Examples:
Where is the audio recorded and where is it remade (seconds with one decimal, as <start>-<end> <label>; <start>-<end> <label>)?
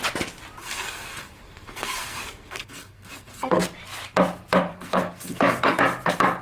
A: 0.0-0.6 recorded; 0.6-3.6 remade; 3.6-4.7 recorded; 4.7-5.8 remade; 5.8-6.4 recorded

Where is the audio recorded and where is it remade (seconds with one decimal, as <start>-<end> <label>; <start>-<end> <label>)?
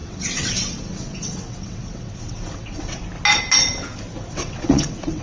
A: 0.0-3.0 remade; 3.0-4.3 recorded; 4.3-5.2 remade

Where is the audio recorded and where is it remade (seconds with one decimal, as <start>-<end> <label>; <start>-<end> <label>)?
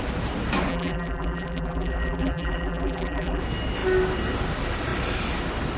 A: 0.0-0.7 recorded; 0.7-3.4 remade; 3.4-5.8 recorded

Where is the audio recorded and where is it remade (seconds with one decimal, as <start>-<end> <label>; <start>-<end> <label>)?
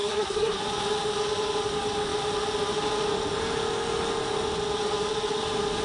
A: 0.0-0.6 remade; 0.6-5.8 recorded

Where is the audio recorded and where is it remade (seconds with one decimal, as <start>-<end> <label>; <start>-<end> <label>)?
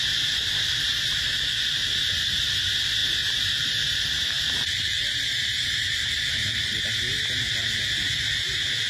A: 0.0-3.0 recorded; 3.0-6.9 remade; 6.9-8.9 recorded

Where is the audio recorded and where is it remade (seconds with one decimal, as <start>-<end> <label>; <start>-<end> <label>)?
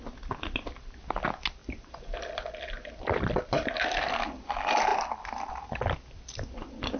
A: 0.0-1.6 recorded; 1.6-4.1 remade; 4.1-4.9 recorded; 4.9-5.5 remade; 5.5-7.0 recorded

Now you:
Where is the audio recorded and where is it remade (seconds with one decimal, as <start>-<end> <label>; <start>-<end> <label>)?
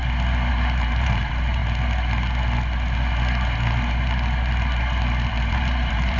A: 0.0-0.5 recorded; 0.5-1.6 remade; 1.6-5.3 recorded; 5.3-6.2 remade